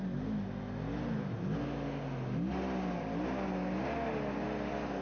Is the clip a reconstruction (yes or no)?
no